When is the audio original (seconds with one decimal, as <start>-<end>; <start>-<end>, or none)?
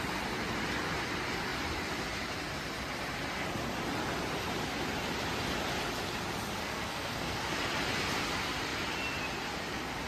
0.0-6.6; 7.4-10.1